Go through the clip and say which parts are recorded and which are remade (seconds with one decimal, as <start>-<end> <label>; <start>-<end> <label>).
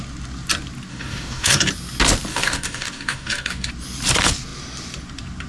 0.0-0.9 recorded; 0.9-1.7 remade; 1.7-2.3 recorded; 2.3-3.7 remade; 3.7-5.5 recorded